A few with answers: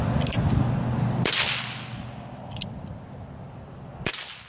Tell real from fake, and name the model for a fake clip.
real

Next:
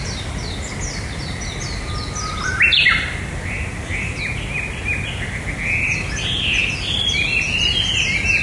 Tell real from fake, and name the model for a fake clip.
real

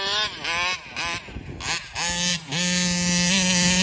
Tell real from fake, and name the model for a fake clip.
real